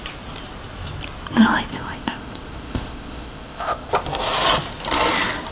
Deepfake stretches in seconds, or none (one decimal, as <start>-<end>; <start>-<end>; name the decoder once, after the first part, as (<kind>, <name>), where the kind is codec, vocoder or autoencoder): 1.7-3.9 (codec, ZipCodec)